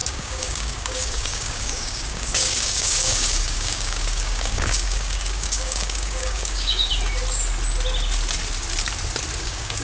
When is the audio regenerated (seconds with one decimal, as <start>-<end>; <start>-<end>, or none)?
0.0-6.9; 9.4-9.8